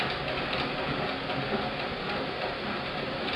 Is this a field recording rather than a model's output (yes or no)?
yes